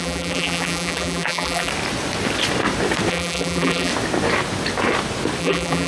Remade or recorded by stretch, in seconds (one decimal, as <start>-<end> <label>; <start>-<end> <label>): 0.0-1.7 remade; 1.7-3.1 recorded; 3.1-3.9 remade; 3.9-5.4 recorded; 5.4-5.9 remade